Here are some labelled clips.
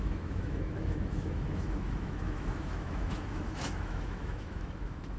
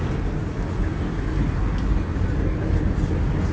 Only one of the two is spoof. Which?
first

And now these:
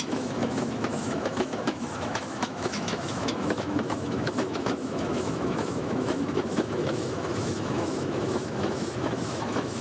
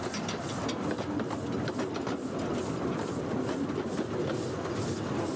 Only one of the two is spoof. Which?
first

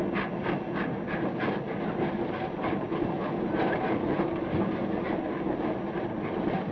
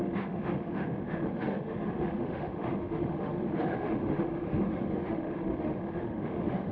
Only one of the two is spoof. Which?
second